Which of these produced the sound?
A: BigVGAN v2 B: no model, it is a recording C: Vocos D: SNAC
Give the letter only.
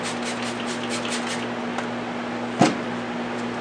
B